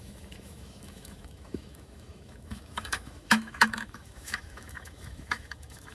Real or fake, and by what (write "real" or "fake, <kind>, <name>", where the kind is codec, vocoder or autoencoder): fake, autoencoder, DAC-VAE